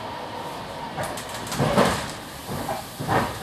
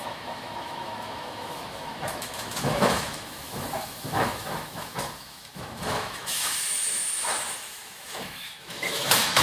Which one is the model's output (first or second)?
second